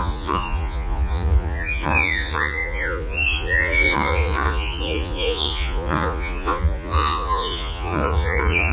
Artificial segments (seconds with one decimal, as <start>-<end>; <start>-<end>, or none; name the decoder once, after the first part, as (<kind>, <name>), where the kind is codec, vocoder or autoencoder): 0.0-8.7 (vocoder, Vocos)